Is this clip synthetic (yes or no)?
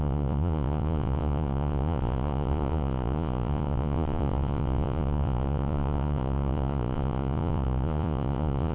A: yes